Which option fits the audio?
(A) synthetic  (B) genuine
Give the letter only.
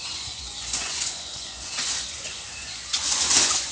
A